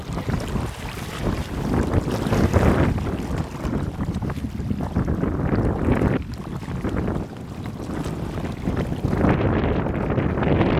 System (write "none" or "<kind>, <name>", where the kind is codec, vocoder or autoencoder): none